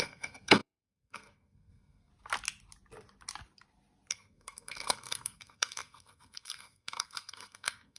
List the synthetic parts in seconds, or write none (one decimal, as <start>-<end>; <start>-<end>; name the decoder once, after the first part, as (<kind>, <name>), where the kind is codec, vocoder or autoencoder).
0.0-2.1 (codec, SNAC); 4.1-8.0